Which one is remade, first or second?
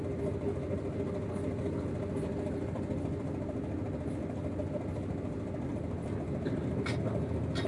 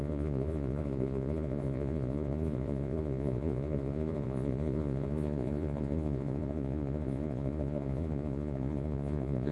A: second